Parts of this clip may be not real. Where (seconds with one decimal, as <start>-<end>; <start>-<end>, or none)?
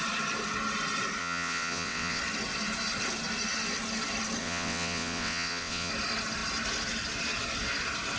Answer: 1.2-2.2; 4.4-5.9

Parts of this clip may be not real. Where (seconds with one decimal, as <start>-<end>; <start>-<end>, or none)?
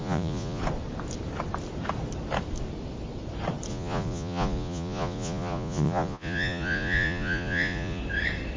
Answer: 0.0-0.6; 3.7-8.0